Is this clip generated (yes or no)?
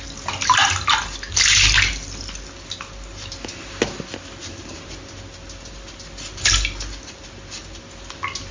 no